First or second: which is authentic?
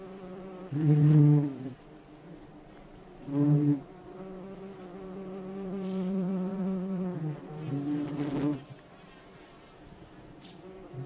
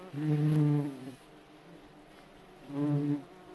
second